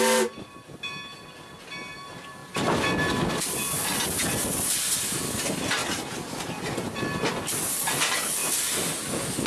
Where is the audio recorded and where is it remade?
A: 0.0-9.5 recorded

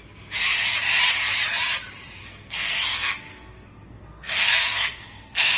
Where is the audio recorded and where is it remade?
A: 0.0-2.2 recorded; 2.2-5.6 remade